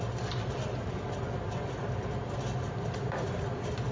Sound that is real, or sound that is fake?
real